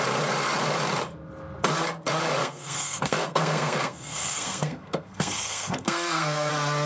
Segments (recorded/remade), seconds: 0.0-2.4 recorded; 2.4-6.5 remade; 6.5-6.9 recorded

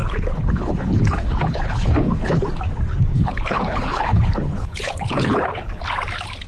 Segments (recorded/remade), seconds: 0.0-2.4 remade; 2.4-3.1 recorded; 3.1-5.8 remade; 5.8-6.5 recorded

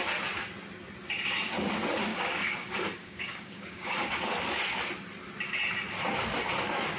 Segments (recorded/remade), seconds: 0.0-2.1 recorded; 2.1-4.2 remade; 4.2-7.0 recorded

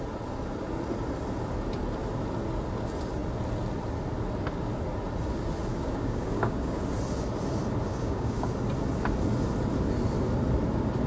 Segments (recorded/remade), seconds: 0.0-5.7 recorded; 5.7-6.8 remade; 6.8-7.9 recorded; 7.9-8.5 remade; 8.5-11.1 recorded

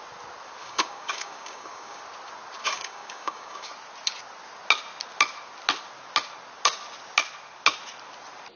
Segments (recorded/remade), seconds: 0.0-0.6 recorded; 0.6-2.0 remade; 2.0-2.6 recorded; 2.6-3.7 remade; 3.7-8.6 recorded

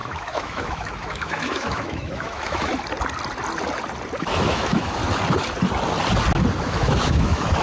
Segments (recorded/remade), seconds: 0.0-2.7 remade; 2.7-4.2 recorded; 4.2-5.0 remade; 5.0-6.6 recorded; 6.6-7.6 remade

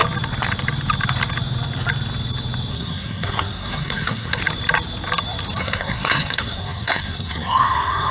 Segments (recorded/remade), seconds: 0.0-2.7 recorded; 2.7-4.4 remade; 4.4-5.6 recorded; 5.6-8.1 remade